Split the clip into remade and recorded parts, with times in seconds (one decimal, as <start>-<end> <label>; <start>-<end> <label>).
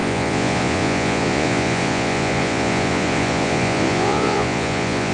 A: 0.0-5.1 remade